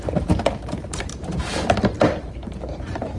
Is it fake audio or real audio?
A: fake